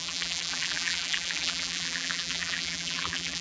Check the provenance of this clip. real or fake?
fake